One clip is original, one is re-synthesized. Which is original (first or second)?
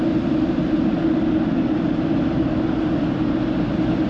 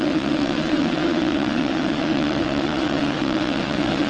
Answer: first